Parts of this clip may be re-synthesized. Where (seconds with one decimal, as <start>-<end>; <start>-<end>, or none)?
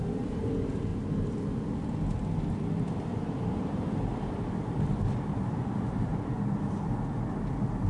0.0-0.9; 2.4-6.1; 6.7-7.9